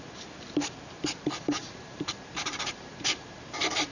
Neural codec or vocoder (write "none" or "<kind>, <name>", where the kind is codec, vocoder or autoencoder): vocoder, BigVGAN v2